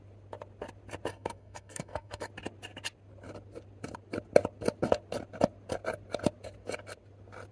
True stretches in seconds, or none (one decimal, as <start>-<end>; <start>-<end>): 0.0-1.1; 2.3-7.5